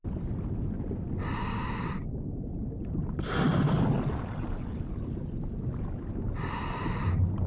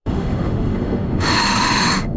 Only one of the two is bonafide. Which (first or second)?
first